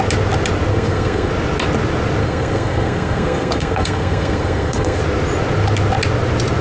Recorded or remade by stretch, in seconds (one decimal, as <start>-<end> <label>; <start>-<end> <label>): 0.0-0.7 recorded; 0.7-1.3 remade; 1.3-2.2 recorded; 2.2-5.0 remade; 5.0-6.6 recorded